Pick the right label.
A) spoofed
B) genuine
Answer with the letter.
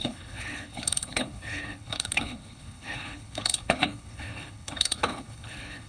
A